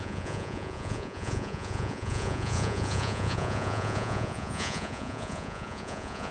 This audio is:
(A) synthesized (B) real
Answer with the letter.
A